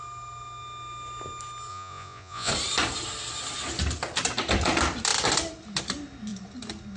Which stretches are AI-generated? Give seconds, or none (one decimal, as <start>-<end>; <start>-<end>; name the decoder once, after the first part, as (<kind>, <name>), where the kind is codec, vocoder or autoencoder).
1.7-2.5 (vocoder, Vocos)